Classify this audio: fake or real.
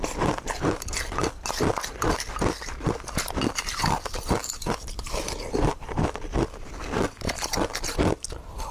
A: fake